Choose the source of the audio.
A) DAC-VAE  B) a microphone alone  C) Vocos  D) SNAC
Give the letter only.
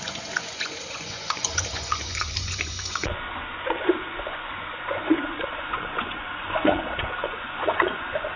C